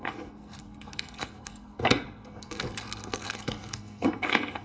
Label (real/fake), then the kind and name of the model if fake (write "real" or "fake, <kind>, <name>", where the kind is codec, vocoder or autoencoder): fake, codec, SNAC